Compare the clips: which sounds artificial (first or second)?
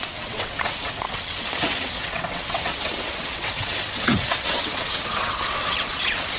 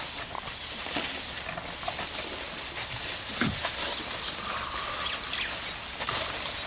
first